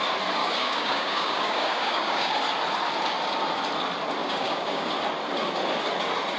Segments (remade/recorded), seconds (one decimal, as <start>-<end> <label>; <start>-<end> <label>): 0.0-0.4 recorded; 0.4-2.4 remade; 2.4-4.2 recorded; 4.2-4.9 remade; 4.9-6.4 recorded